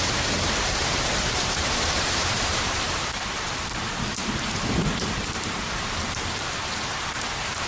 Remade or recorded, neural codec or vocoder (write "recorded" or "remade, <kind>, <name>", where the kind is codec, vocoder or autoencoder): remade, vocoder, BigVGAN v2